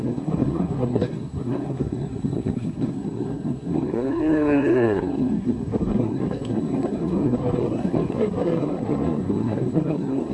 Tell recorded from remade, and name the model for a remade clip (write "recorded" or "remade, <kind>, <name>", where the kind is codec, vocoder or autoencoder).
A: remade, codec, SNAC